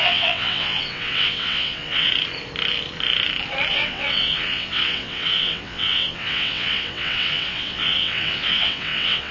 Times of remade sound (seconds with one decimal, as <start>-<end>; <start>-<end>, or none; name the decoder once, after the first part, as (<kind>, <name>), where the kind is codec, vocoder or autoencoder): 0.0-2.1 (vocoder, WaveNeXt); 3.7-9.3